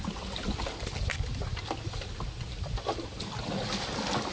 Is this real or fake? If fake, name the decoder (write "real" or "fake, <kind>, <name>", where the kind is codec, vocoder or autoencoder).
real